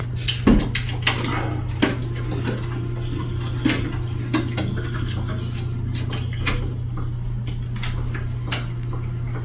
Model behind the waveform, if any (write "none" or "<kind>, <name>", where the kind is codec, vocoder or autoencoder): none